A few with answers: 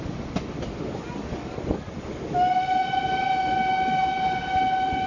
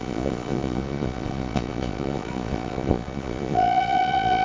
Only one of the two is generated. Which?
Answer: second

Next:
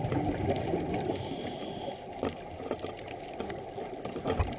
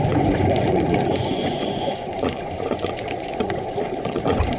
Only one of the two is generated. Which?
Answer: second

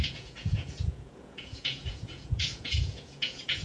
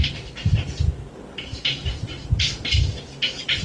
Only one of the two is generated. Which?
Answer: first